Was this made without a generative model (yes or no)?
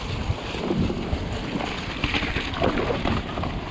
yes